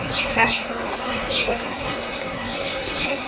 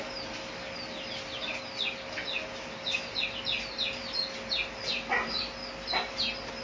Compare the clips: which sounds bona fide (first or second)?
second